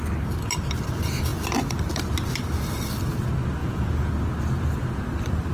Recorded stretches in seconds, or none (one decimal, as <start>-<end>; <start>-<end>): 0.0-3.6; 4.1-5.5